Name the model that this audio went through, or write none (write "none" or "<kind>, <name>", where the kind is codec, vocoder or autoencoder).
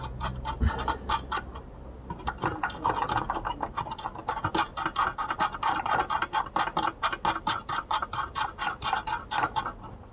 none